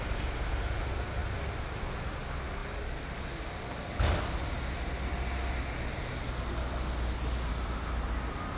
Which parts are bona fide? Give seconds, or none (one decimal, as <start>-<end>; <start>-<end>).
0.0-8.6